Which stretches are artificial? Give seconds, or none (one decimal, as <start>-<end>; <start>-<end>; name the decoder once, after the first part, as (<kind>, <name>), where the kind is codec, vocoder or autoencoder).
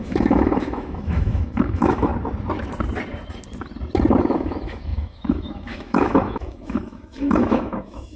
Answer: 0.0-2.1 (autoencoder, DAC-VAE); 4.2-8.2